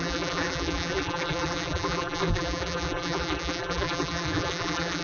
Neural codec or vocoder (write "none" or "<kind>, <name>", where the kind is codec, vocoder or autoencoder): vocoder, BigVGAN v2